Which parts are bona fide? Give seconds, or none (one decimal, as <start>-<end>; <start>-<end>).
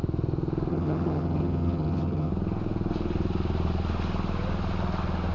0.0-0.7; 2.3-5.3